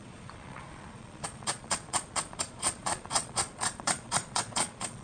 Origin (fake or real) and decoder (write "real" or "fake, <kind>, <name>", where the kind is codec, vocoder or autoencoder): fake, vocoder, Vocos